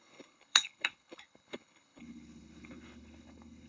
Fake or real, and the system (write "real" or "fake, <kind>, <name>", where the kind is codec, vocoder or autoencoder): fake, codec, HILCodec